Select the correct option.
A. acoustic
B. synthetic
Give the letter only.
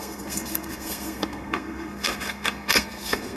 B